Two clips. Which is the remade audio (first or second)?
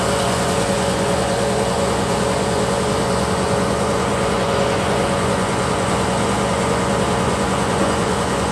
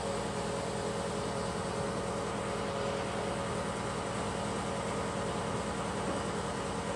first